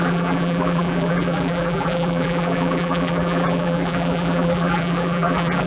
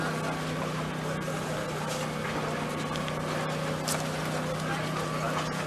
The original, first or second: second